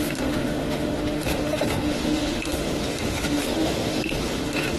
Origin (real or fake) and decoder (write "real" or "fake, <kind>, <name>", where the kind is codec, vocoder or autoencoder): fake, autoencoder, DAC-VAE